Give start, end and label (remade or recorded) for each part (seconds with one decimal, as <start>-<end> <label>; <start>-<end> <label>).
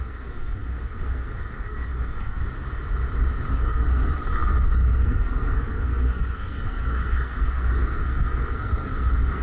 0.0-2.4 remade; 2.4-3.5 recorded; 3.5-9.4 remade